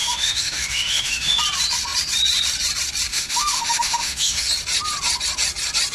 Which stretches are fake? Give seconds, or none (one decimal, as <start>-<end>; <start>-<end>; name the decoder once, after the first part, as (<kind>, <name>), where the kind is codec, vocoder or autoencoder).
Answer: 0.0-1.4 (autoencoder, DAC-VAE); 3.1-4.5